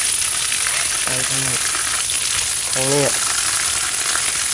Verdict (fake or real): real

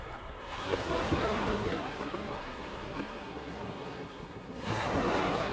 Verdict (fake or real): fake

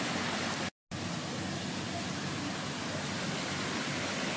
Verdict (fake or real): real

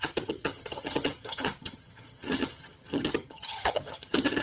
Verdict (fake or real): fake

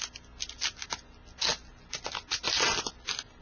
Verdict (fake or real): real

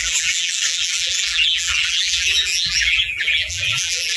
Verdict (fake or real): fake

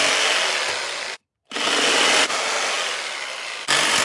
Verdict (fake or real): real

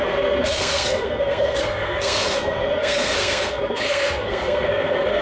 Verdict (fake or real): fake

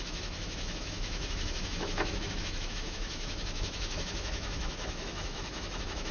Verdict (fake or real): fake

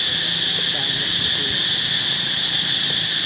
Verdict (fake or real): real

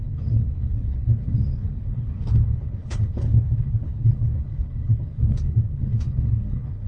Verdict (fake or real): fake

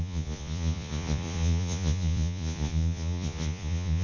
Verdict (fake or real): fake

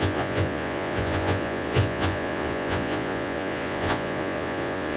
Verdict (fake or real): fake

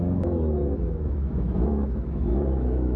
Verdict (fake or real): fake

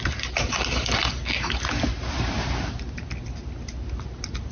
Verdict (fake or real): real